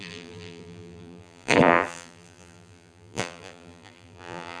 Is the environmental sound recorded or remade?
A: remade